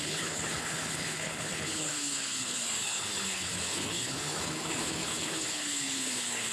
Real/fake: fake